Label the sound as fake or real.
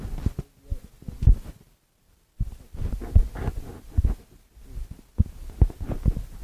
real